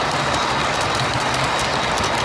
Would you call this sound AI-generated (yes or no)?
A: no